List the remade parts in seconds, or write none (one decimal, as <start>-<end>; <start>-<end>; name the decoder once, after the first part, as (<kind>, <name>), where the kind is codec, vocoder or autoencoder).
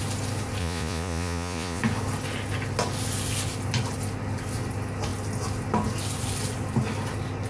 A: 0.6-1.8 (vocoder, Vocos)